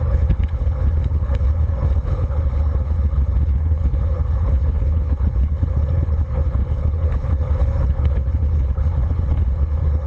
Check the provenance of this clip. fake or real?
fake